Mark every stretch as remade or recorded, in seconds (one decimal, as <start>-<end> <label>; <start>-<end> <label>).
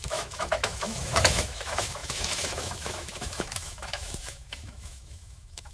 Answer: 0.0-5.7 remade